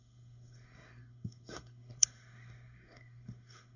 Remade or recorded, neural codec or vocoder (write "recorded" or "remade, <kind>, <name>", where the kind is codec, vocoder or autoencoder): remade, codec, SNAC